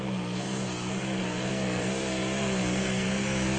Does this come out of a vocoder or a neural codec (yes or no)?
yes